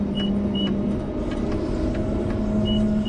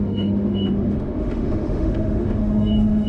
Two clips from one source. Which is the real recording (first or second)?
first